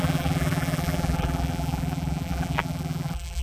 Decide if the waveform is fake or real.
fake